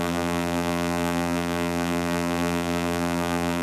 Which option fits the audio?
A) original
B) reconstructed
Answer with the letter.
B